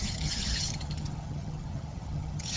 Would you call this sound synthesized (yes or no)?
yes